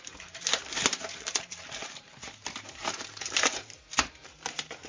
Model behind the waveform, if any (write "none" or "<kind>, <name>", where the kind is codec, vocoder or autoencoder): vocoder, BigVGAN v2